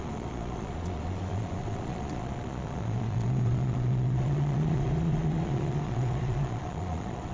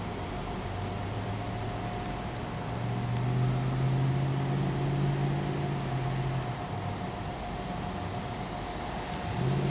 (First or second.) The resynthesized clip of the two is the first